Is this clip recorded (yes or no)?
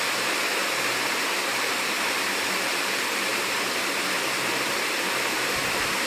no